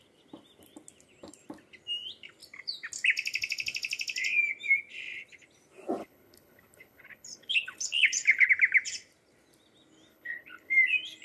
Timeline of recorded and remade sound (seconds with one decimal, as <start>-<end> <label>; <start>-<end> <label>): 0.0-6.0 recorded; 6.0-8.5 remade; 8.5-10.1 recorded; 10.1-10.7 remade; 10.7-11.2 recorded